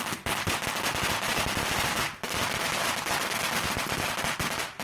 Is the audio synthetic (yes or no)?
no